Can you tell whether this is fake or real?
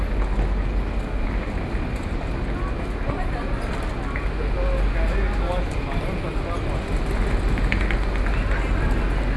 real